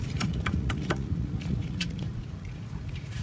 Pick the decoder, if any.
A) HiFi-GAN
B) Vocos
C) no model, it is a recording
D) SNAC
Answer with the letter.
B